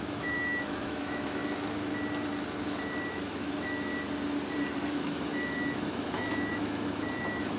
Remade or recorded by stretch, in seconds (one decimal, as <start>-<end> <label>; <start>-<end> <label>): 0.0-1.4 remade; 1.4-3.1 recorded; 3.1-3.9 remade; 3.9-4.7 recorded; 4.7-7.6 remade